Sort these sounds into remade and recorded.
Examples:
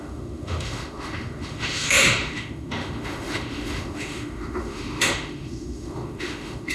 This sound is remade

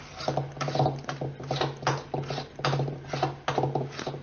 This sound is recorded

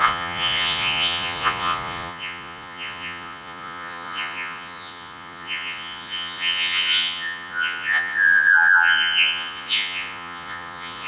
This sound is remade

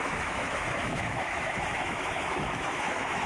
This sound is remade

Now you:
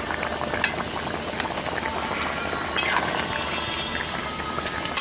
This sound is recorded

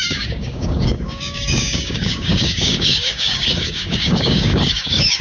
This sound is remade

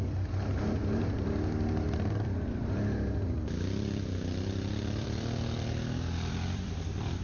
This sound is remade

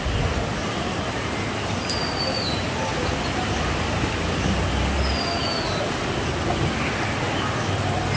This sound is recorded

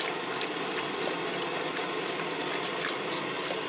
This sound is recorded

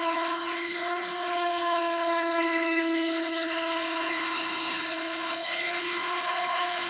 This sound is remade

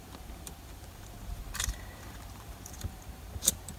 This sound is remade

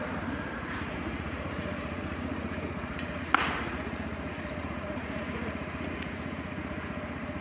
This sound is remade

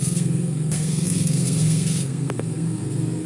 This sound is remade